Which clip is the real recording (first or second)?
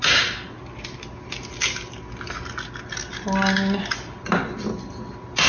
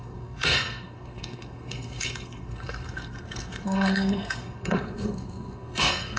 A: first